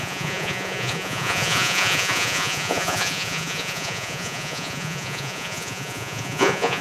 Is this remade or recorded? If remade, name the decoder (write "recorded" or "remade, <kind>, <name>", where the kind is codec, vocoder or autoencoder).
remade, vocoder, Vocos